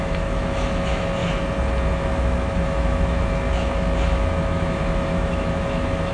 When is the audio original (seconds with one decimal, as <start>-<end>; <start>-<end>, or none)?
1.2-1.9